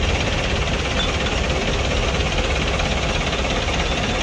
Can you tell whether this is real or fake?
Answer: real